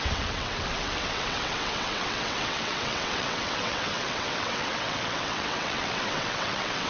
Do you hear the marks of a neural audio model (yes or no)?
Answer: yes